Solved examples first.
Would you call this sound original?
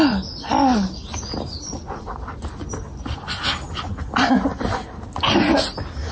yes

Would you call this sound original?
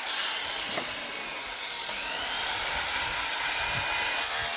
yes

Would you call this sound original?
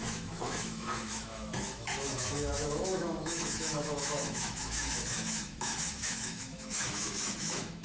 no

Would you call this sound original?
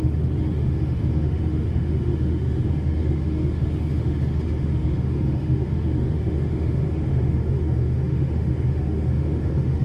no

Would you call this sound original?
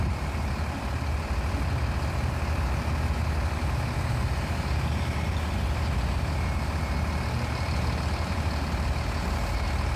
yes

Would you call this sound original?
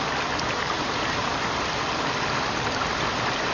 yes